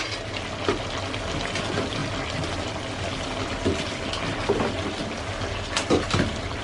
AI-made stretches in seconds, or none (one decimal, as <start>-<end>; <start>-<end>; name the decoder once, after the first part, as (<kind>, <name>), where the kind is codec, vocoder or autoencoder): none